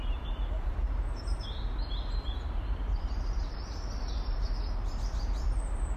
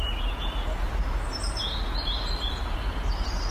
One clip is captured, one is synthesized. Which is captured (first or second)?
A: second